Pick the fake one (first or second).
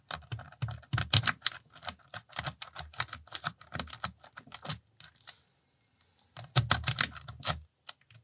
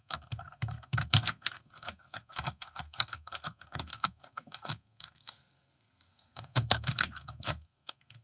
second